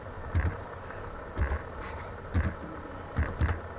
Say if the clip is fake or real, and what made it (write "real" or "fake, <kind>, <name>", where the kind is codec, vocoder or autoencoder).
fake, vocoder, BigVGAN v2